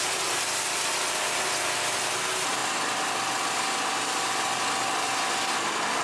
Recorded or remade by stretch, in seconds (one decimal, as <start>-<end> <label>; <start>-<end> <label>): 0.0-6.0 recorded